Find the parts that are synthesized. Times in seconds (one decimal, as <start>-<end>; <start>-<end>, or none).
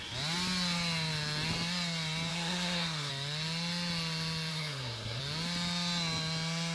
2.3-3.1; 4.5-5.2